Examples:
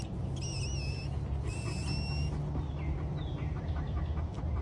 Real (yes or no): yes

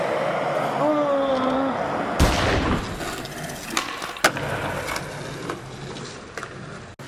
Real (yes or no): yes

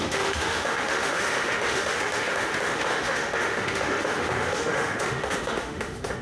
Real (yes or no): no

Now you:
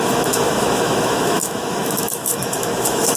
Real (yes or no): no